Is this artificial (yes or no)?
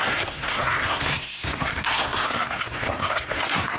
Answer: yes